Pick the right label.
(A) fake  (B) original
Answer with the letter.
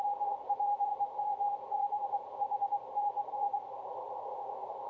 A